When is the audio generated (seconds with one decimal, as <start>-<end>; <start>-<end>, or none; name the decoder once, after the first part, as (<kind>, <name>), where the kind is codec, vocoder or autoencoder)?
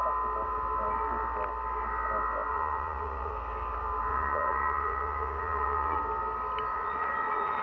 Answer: 2.5-3.3 (vocoder, Vocos); 4.1-6.0; 6.7-7.6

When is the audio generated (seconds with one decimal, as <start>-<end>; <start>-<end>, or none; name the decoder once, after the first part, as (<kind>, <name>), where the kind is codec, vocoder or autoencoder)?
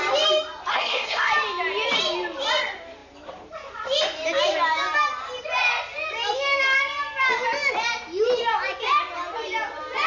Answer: 0.7-1.3 (codec, SNAC)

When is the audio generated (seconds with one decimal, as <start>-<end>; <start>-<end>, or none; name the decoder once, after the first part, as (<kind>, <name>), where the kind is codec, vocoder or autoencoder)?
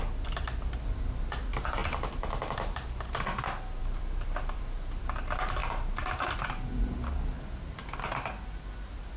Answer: 1.8-2.3 (vocoder, BigVGAN v2); 3.8-5.0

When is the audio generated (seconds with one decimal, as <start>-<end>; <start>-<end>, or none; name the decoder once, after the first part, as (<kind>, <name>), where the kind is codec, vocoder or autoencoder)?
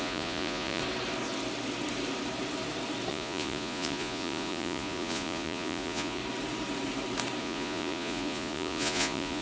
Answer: 0.0-0.8 (vocoder, Vocos); 3.1-6.2; 7.4-9.4